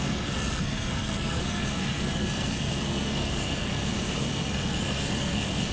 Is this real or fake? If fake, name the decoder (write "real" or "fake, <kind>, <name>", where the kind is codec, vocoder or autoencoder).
fake, codec, SNAC